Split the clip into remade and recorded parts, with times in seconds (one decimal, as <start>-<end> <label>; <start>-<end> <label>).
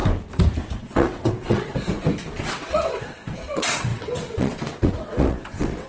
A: 0.0-0.8 recorded; 0.8-1.7 remade; 1.7-2.4 recorded; 2.4-5.9 remade